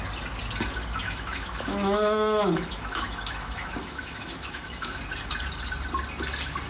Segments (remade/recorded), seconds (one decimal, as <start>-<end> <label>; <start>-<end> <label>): 0.0-1.0 recorded; 1.0-5.0 remade; 5.0-6.7 recorded